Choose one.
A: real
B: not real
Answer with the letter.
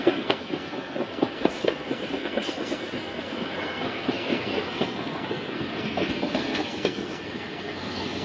B